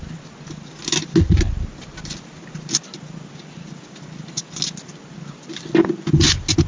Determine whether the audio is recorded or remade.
recorded